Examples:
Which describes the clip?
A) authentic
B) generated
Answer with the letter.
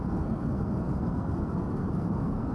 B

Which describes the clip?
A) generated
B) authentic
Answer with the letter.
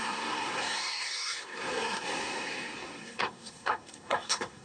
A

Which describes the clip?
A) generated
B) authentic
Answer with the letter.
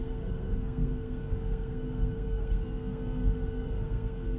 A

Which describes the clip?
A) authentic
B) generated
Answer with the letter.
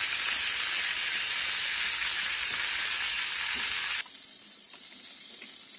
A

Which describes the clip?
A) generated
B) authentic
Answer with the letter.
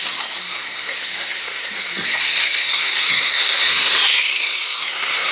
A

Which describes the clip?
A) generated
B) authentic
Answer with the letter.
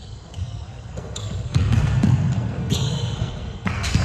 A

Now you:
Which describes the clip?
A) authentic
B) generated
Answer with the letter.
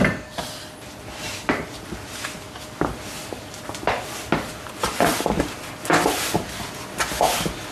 A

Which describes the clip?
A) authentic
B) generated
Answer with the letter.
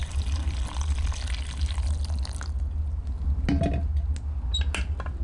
A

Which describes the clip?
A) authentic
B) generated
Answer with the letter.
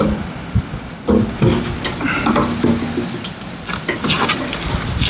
A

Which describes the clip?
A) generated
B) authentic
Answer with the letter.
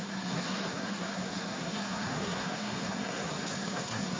A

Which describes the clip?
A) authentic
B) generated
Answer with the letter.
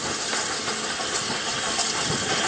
A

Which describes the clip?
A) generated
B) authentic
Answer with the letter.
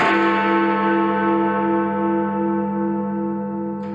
B